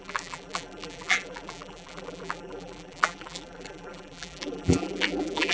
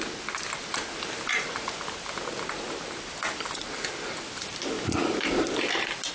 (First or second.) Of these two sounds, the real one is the second